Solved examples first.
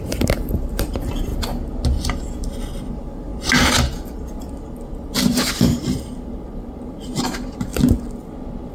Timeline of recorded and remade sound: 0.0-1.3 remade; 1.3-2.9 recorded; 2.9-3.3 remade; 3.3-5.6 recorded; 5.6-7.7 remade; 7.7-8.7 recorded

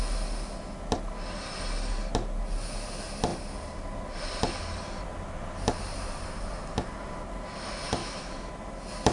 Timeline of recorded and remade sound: 0.0-8.0 recorded; 8.0-8.5 remade; 8.5-9.1 recorded

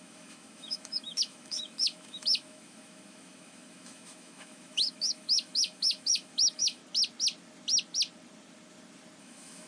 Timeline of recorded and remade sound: 0.0-6.8 remade; 6.8-9.2 recorded; 9.2-9.7 remade

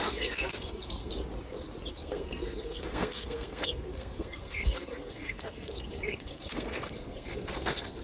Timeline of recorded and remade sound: 0.0-1.1 remade; 1.1-1.9 recorded; 1.9-8.0 remade

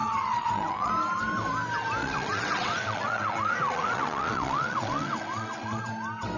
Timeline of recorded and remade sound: 0.0-0.9 remade; 0.9-2.0 recorded; 2.0-5.8 remade; 5.8-6.4 recorded

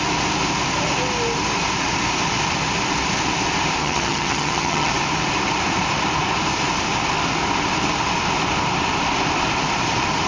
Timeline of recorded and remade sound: 0.0-3.8 recorded; 3.8-4.9 remade; 4.9-10.3 recorded

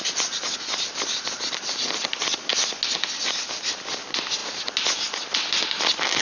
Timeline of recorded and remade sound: 0.0-6.2 recorded

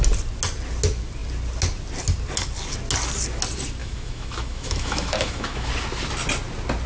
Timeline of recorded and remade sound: 0.0-3.8 recorded; 3.8-5.7 remade; 5.7-6.9 recorded